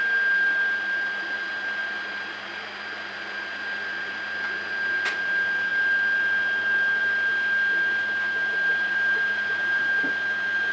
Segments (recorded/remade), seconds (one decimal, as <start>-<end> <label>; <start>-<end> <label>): 0.0-8.7 recorded; 8.7-9.9 remade; 9.9-10.7 recorded